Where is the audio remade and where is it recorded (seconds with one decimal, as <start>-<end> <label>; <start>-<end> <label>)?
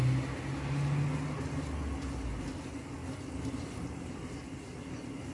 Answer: 0.0-3.0 recorded; 3.0-4.3 remade; 4.3-5.3 recorded